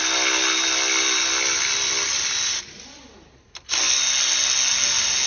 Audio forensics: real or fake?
real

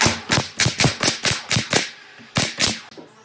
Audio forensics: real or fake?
real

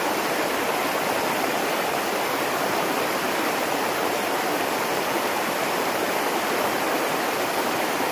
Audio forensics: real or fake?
fake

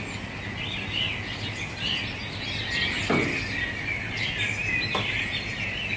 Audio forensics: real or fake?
real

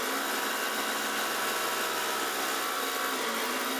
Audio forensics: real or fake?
real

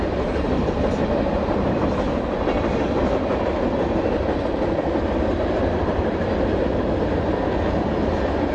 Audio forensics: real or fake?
real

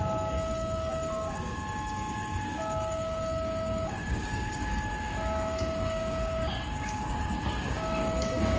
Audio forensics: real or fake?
fake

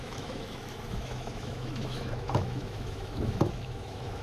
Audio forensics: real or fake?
fake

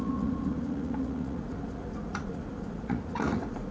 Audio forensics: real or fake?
fake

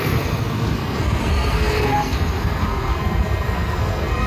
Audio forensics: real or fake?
fake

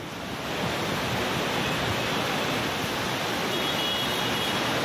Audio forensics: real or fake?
real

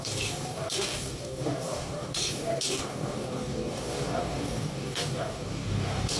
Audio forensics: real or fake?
fake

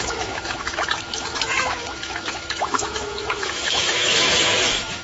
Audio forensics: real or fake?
fake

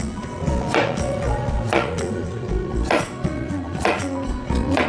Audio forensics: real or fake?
fake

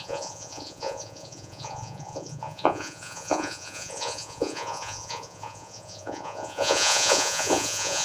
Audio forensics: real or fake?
fake